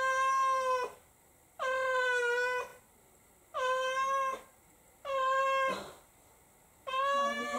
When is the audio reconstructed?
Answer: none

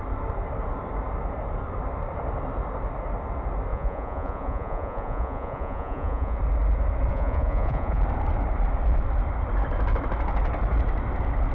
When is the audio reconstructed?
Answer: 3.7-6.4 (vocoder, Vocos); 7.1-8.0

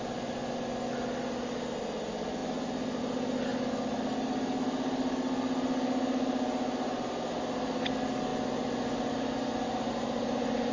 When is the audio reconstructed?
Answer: none

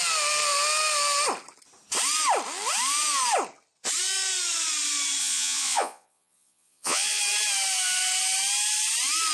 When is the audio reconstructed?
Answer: 5.2-7.2 (vocoder, Vocos)